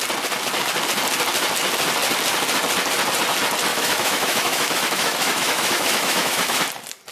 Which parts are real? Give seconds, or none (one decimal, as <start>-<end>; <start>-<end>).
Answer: 0.0-3.7; 6.6-7.1